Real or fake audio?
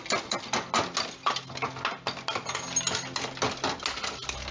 real